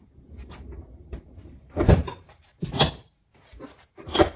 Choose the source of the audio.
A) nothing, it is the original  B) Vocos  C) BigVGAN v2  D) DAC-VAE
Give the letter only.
C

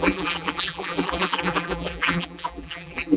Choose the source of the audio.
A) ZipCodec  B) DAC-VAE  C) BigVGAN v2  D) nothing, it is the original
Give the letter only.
C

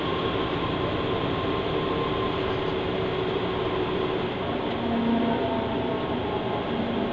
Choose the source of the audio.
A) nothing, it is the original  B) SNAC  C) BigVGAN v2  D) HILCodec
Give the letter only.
A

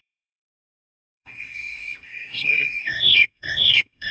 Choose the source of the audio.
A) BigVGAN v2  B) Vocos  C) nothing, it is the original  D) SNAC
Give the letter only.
D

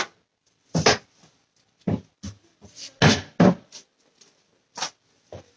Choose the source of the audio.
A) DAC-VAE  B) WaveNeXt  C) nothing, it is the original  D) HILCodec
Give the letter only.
C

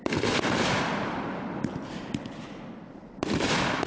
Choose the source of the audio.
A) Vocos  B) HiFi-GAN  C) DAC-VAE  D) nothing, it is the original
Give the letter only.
D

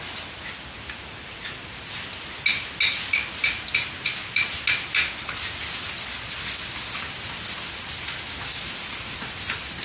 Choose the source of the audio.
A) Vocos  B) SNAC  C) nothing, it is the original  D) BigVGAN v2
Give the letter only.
C